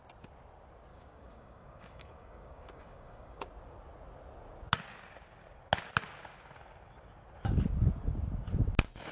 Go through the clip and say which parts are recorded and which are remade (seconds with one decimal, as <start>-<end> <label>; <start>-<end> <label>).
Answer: 0.0-0.9 recorded; 0.9-3.4 remade; 3.4-9.1 recorded